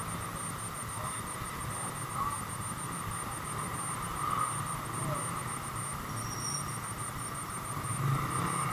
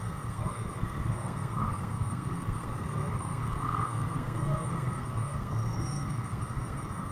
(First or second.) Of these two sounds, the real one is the first